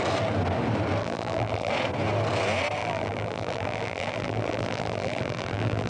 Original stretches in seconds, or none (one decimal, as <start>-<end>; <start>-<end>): 0.0-1.0; 1.7-2.8